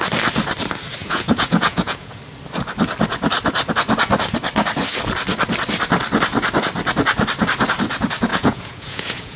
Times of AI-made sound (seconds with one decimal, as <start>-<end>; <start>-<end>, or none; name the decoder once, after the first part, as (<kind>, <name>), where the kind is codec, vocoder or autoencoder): 1.0-2.2 (vocoder, Vocos); 8.3-9.4